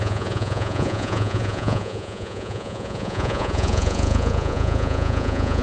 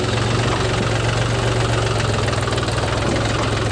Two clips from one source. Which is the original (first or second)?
second